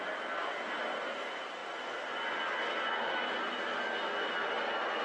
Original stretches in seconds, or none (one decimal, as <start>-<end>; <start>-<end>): 0.0-5.0